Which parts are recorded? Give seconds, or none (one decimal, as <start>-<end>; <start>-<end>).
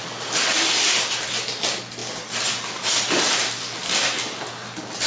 0.0-5.1